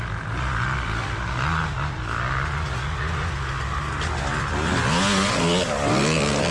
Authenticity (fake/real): real